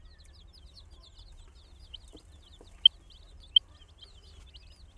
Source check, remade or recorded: recorded